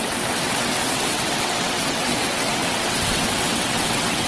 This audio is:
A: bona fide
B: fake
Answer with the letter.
B